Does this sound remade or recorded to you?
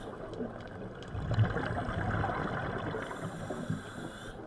recorded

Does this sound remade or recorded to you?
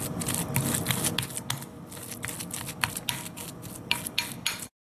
recorded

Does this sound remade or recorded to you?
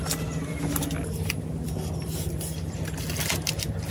recorded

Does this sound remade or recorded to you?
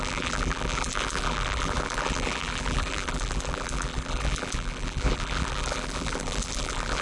remade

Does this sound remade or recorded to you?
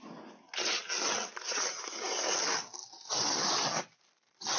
recorded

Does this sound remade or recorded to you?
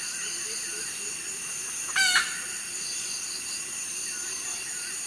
recorded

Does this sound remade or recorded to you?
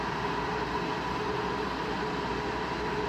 recorded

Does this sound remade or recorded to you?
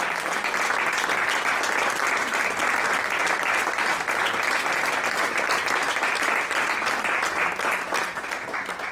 recorded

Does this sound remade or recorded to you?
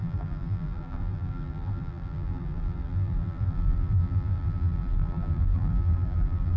remade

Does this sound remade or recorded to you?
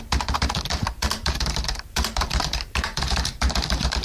remade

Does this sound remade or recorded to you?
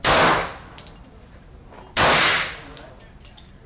recorded